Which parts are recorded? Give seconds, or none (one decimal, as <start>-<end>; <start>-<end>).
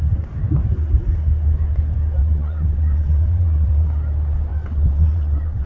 0.0-2.2; 3.9-4.5